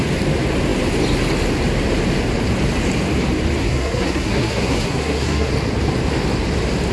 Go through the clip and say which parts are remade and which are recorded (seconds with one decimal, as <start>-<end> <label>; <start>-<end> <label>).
0.0-3.6 recorded; 3.6-5.5 remade; 5.5-6.9 recorded